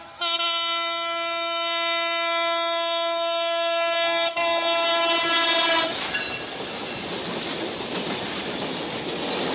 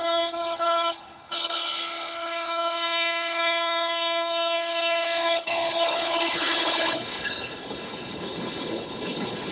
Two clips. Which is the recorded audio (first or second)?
first